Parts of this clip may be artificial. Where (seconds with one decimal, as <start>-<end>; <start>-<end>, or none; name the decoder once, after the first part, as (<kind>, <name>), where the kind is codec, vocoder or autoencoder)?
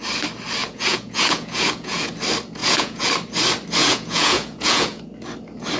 0.6-2.1 (vocoder, Vocos); 2.6-3.1; 3.8-5.0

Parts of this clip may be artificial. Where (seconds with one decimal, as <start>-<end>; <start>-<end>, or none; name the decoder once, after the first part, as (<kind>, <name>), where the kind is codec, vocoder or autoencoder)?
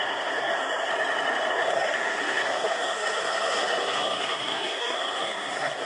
0.0-0.9 (codec, SNAC); 1.5-5.9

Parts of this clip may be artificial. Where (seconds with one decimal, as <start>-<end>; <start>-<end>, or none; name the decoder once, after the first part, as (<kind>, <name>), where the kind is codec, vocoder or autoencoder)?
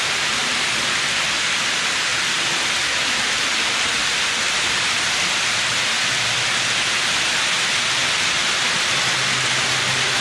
none